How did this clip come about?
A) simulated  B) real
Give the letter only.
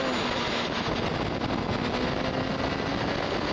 B